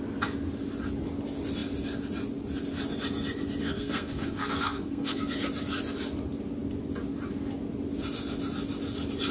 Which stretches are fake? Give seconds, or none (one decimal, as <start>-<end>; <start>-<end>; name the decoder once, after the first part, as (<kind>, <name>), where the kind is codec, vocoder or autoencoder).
3.6-5.2 (codec, SNAC)